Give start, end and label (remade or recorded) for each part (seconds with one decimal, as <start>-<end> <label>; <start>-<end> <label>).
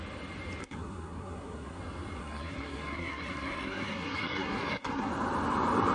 0.0-0.6 recorded; 0.6-1.8 remade; 1.8-2.2 recorded; 2.2-5.1 remade; 5.1-5.9 recorded